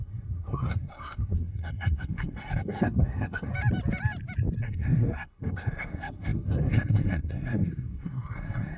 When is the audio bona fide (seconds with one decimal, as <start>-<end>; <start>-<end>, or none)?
3.5-4.6

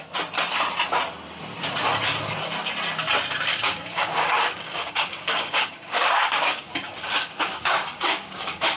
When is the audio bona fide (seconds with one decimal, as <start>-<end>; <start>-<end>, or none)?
0.0-3.5

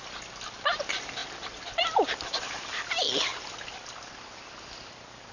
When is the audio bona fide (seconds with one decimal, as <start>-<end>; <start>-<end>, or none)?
0.0-5.3

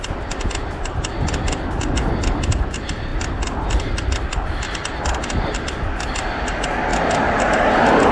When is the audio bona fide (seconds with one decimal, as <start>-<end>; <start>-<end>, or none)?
0.0-3.1; 3.8-6.9

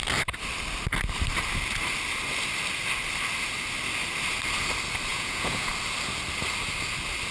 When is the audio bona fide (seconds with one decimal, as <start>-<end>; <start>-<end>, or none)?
0.0-5.1; 5.7-7.3

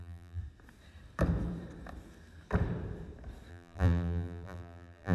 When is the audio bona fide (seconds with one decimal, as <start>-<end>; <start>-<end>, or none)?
0.4-3.5

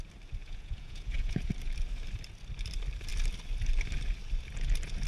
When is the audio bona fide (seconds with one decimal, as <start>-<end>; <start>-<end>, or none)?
0.0-0.4; 1.5-5.1

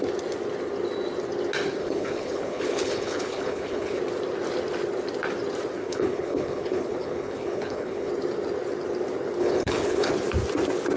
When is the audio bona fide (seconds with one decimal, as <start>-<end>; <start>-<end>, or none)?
0.0-1.8; 4.0-5.8; 8.1-9.4; 10.1-11.0